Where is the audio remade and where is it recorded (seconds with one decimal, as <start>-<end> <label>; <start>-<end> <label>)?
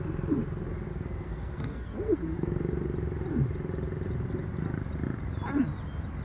0.0-0.9 recorded; 0.9-2.6 remade; 2.6-6.2 recorded